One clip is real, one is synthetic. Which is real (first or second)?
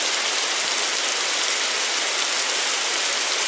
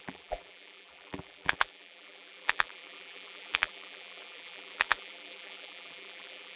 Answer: first